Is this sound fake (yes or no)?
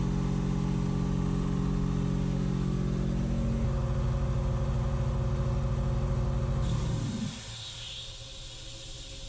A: no